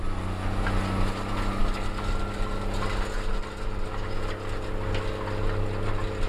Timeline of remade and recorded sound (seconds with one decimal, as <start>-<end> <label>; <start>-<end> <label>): 0.0-6.3 recorded